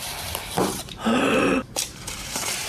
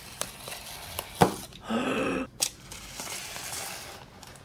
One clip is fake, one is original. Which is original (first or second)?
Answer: second